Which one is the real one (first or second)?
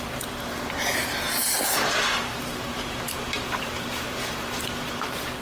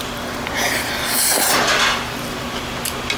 second